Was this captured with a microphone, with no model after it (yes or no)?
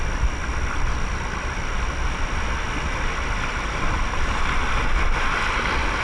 yes